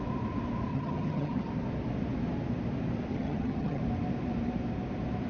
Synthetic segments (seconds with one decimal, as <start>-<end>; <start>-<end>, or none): 0.7-1.5; 3.1-3.8